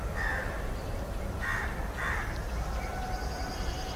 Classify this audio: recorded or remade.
recorded